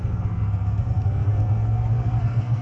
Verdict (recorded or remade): remade